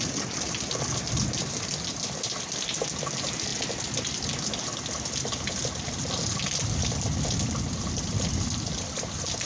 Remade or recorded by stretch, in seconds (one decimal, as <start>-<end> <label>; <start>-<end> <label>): 0.0-9.5 recorded